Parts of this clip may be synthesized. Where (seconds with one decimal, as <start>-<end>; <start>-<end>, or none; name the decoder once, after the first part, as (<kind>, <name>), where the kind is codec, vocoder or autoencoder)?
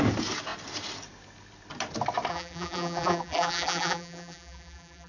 2.3-5.1 (vocoder, BigVGAN v2)